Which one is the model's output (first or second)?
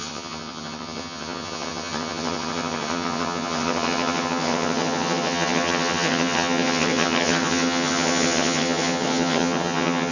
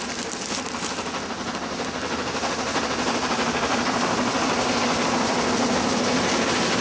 first